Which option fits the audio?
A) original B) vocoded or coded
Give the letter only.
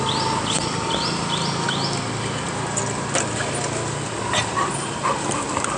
B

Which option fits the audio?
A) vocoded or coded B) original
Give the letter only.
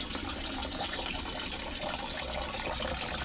A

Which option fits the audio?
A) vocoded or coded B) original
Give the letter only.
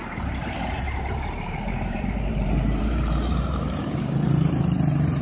A